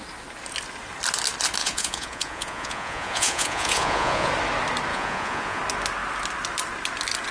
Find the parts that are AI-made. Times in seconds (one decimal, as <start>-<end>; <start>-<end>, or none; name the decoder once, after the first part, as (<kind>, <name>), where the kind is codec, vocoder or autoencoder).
1.6-4.3 (vocoder, Vocos); 4.9-5.6